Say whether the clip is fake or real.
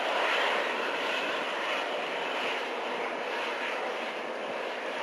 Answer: fake